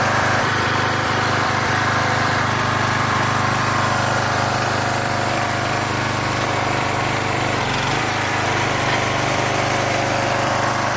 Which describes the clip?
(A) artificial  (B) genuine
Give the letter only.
A